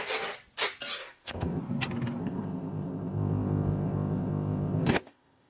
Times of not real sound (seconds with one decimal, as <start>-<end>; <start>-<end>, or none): 1.0-1.6; 2.2-5.5